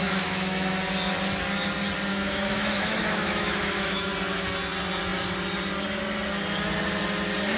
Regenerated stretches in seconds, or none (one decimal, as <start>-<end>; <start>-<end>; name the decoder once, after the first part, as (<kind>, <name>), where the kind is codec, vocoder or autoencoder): 0.0-0.7 (autoencoder, DAC-VAE); 2.1-4.1